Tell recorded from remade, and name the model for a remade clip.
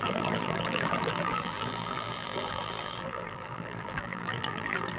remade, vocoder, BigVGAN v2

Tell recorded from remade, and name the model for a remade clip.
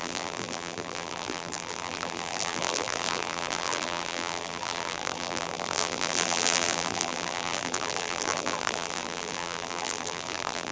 remade, vocoder, BigVGAN v2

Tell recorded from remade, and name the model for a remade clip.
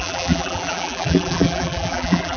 remade, vocoder, BigVGAN v2